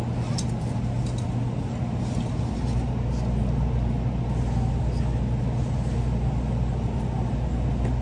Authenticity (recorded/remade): recorded